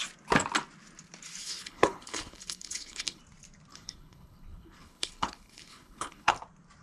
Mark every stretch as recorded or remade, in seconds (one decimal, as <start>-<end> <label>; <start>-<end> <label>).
0.0-1.4 recorded; 1.4-3.2 remade; 3.2-3.7 recorded; 3.7-6.3 remade; 6.3-6.8 recorded